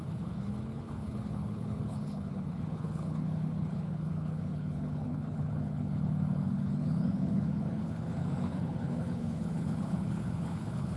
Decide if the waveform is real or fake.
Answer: fake